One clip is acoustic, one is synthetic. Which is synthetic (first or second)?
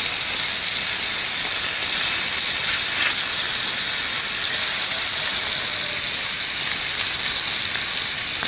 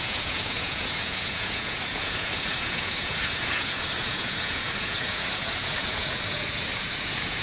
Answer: second